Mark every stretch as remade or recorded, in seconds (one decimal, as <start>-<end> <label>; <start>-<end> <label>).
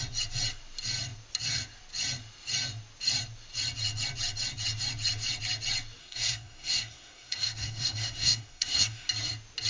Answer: 0.0-6.0 recorded; 6.0-9.1 remade; 9.1-9.7 recorded